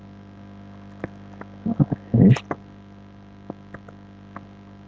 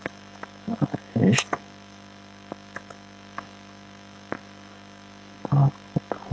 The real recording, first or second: first